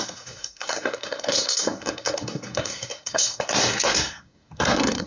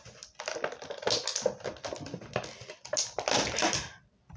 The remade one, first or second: first